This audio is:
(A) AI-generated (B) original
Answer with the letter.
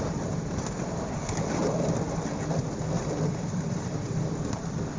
B